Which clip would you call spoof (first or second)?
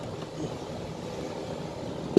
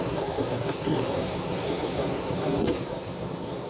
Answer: second